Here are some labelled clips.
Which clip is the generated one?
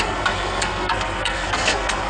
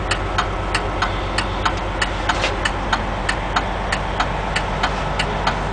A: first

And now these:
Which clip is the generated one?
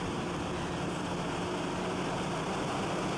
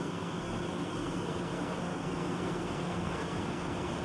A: second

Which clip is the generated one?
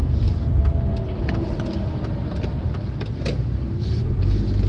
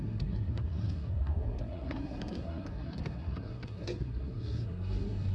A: second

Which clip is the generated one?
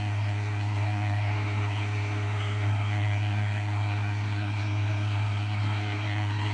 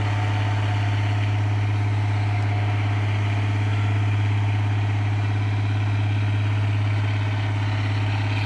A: first